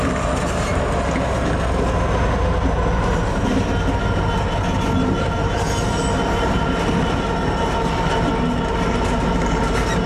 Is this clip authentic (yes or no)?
yes